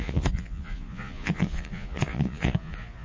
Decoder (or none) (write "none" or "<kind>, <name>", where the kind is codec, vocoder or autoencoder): vocoder, Vocos